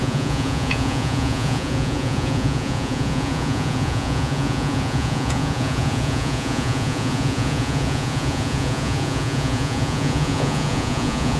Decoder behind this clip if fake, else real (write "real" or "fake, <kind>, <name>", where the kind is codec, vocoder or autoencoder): fake, vocoder, Vocos